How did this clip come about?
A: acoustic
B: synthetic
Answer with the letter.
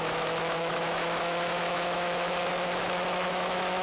B